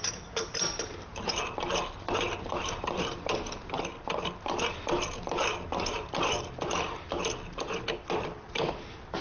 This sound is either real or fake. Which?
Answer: real